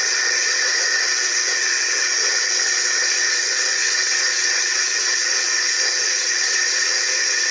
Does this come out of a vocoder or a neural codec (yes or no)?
yes